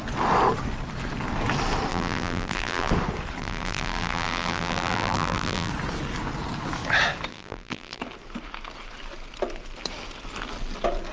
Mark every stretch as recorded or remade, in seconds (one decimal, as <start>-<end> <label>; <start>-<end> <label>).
0.0-1.9 recorded; 1.9-2.9 remade; 2.9-3.4 recorded; 3.4-5.7 remade; 5.7-7.3 recorded; 7.3-8.0 remade; 8.0-11.1 recorded